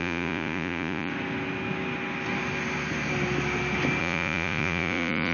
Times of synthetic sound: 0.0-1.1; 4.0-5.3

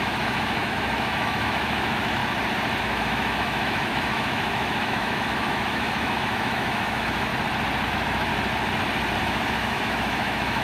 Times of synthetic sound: 0.0-2.2; 2.8-7.3; 7.9-8.3; 9.2-10.6

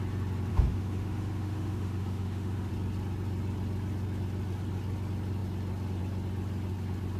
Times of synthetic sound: 0.5-2.7

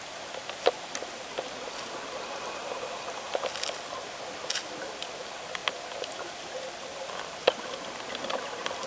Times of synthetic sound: none

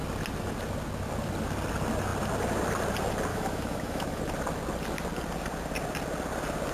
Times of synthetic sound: 3.3-4.2

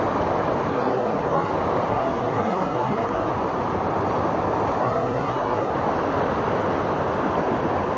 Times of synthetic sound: 0.7-1.5; 1.9-3.3; 4.8-5.7